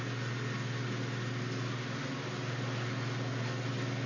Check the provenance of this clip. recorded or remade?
recorded